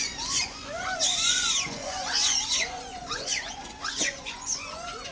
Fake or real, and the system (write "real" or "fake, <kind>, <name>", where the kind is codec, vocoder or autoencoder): fake, vocoder, Vocos